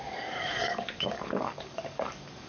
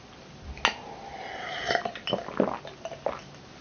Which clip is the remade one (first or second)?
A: first